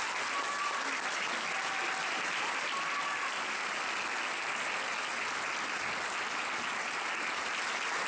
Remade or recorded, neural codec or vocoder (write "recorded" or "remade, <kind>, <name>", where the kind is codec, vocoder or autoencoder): recorded